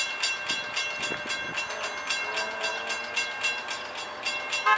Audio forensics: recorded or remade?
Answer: recorded